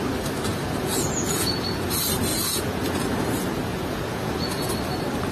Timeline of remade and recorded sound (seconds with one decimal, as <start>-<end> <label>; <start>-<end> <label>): 0.0-0.5 recorded; 0.5-1.9 remade; 1.9-2.3 recorded; 2.3-3.2 remade; 3.2-3.7 recorded; 3.7-4.7 remade; 4.7-5.3 recorded